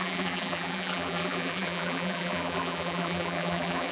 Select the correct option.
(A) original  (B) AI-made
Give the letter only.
B